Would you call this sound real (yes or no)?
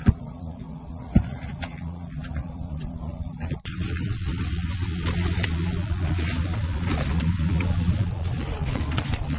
no